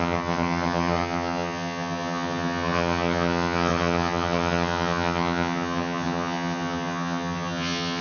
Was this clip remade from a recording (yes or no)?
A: yes